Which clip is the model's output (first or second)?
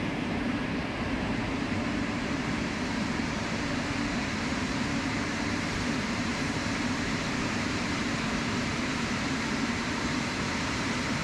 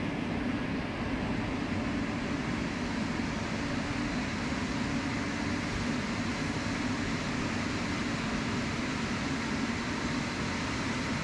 first